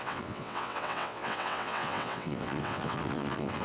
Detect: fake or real fake